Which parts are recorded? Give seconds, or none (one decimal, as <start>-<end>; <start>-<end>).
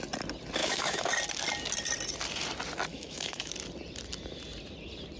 0.0-0.6; 1.1-2.9; 3.5-5.2